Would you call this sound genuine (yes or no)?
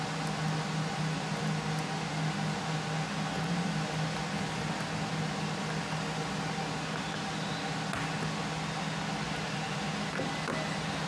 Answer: yes